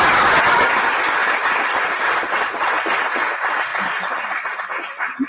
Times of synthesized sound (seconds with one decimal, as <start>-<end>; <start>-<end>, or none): none